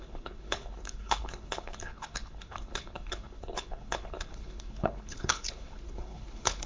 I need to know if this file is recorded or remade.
remade